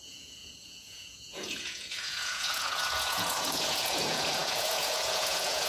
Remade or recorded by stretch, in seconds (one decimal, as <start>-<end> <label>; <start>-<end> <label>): 0.0-5.7 remade